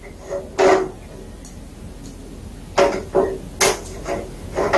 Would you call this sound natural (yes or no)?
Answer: yes